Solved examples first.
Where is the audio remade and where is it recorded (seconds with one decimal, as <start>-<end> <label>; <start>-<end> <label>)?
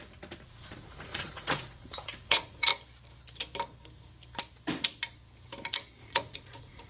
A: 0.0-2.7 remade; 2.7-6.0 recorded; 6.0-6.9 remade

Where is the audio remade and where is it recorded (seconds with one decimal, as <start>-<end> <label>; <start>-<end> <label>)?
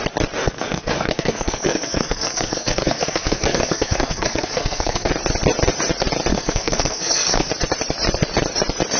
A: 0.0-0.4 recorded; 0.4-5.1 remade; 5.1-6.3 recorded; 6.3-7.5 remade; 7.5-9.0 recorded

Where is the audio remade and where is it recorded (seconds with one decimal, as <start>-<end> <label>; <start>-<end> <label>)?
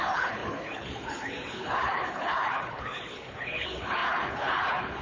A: 0.0-5.0 remade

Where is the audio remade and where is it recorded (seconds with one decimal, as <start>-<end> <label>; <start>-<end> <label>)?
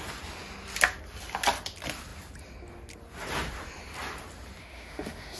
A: 0.0-4.6 recorded; 4.6-5.4 remade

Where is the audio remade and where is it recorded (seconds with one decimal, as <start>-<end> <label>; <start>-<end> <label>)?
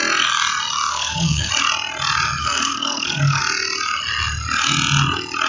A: 0.0-0.9 recorded; 0.9-1.5 remade; 1.5-2.4 recorded; 2.4-3.4 remade; 3.4-5.5 recorded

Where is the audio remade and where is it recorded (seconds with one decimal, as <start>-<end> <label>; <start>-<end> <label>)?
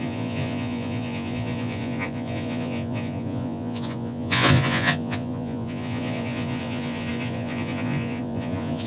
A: 0.0-8.9 remade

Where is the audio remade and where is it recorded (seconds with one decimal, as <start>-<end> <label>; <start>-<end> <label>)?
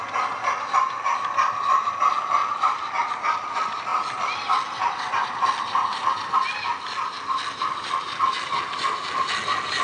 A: 0.0-2.4 recorded; 2.4-3.1 remade; 3.1-9.8 recorded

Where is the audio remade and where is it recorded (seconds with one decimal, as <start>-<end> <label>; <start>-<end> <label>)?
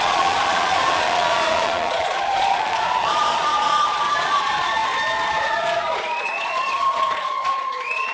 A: 0.0-4.8 remade; 4.8-5.3 recorded; 5.3-8.1 remade